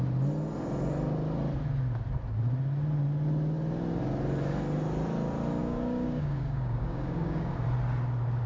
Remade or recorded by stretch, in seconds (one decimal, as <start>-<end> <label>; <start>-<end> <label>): 0.0-5.6 recorded; 5.6-7.5 remade; 7.5-8.5 recorded